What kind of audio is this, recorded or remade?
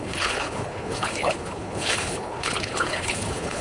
remade